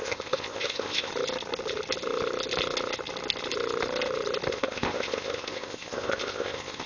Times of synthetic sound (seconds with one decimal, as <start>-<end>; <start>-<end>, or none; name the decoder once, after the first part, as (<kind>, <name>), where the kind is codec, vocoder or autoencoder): 0.0-1.1 (codec, ZipCodec); 4.5-6.9